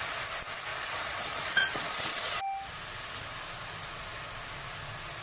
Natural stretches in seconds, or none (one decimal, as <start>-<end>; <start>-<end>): 0.0-0.7; 2.4-5.2